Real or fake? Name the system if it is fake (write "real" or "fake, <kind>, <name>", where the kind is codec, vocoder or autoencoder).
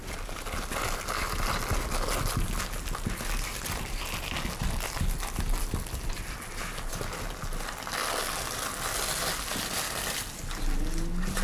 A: real